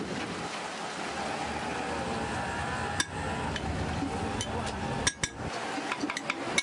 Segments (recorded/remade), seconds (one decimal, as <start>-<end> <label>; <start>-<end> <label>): 0.0-6.6 recorded